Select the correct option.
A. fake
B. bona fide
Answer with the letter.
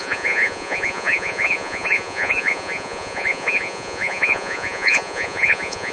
A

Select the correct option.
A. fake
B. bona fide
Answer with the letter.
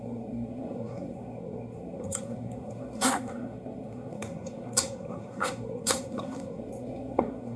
A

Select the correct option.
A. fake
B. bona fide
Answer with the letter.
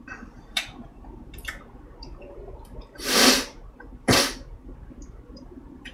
A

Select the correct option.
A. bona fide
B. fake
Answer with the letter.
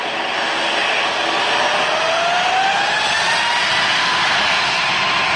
A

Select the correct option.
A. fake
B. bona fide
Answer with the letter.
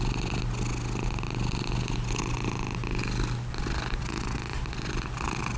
B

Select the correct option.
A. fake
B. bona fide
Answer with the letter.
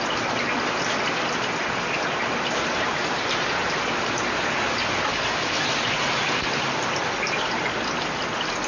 B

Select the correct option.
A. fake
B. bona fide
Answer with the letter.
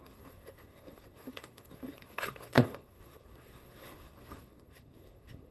A